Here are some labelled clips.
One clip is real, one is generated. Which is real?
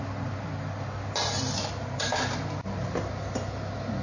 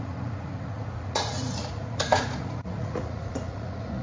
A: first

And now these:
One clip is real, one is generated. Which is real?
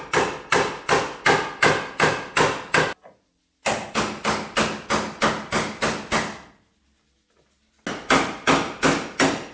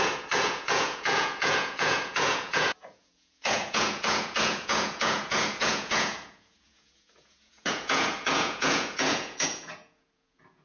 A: first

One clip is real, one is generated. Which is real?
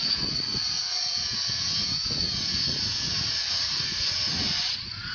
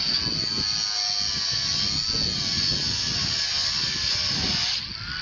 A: second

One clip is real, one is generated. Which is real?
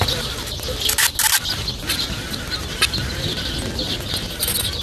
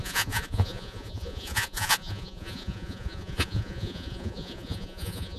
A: first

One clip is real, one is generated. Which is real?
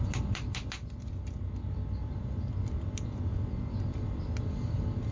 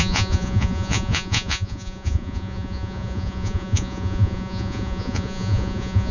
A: first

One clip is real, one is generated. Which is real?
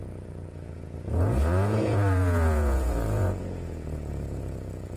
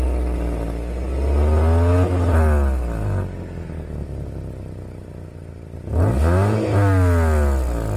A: second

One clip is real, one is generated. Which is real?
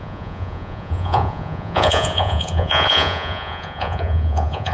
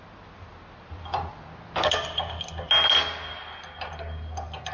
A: second